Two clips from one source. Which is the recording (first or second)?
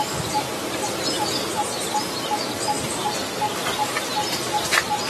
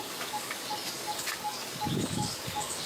first